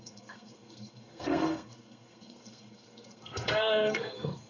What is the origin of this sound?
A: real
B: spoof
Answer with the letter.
B